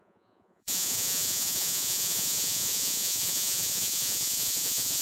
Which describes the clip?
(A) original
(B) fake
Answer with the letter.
B